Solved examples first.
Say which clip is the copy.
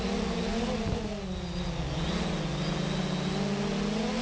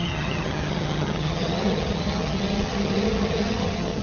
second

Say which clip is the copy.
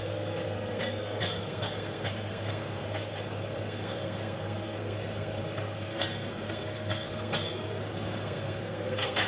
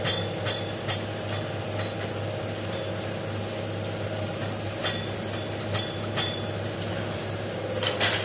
first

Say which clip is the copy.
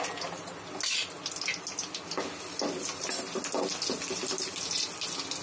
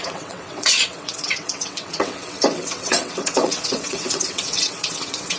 second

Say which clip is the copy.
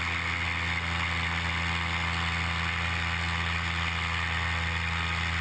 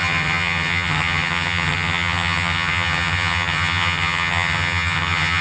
second